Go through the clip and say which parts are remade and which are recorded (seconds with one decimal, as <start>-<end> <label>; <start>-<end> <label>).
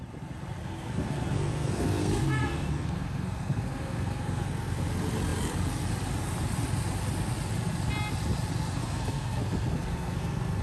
0.0-0.6 recorded; 0.6-4.8 remade; 4.8-8.8 recorded; 8.8-10.6 remade